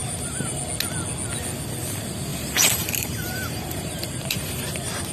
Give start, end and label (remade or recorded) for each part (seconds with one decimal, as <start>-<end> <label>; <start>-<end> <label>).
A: 0.0-0.6 remade; 0.6-2.3 recorded; 2.3-5.1 remade